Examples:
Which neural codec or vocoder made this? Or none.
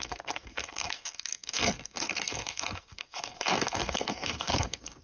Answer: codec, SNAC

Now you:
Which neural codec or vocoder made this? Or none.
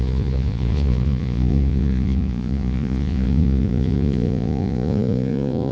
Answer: vocoder, Vocos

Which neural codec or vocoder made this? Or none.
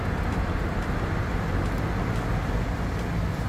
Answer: none